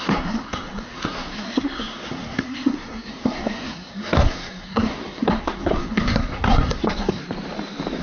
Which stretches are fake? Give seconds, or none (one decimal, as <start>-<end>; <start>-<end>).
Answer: 0.0-7.2